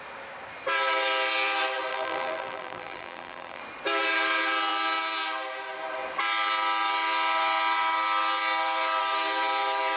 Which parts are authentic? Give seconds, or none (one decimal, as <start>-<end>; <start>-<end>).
0.0-1.9; 3.6-10.0

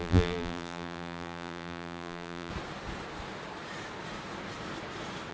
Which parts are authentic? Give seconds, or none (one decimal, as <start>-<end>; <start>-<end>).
2.5-5.3